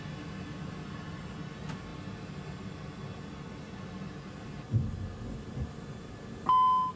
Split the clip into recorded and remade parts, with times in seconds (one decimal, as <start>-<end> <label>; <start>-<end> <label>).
0.0-7.0 recorded